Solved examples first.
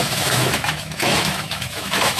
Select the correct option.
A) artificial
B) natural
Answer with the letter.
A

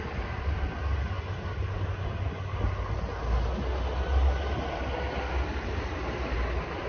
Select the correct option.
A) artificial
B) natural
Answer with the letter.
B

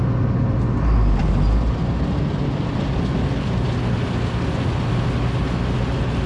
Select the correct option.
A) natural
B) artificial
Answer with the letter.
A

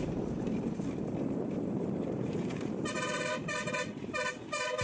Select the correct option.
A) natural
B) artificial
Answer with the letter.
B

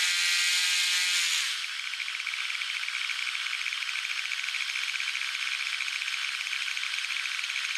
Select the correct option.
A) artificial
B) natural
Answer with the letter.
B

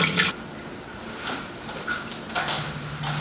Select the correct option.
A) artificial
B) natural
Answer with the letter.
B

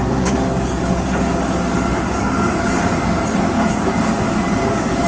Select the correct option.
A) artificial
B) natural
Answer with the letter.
A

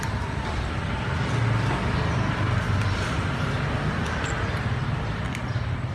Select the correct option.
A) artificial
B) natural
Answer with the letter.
B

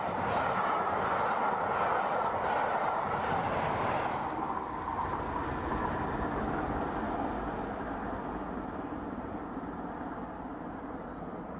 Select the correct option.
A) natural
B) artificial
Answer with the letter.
A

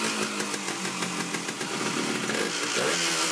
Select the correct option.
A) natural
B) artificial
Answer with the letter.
A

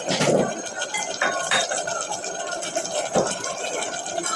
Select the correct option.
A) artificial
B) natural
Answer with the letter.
B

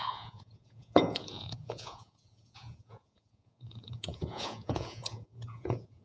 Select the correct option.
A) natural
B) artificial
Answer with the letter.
B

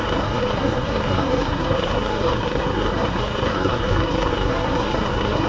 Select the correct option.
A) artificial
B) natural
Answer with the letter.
A